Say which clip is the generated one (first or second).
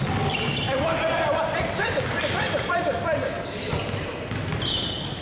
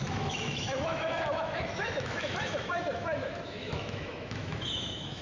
second